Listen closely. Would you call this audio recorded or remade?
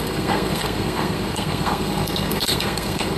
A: remade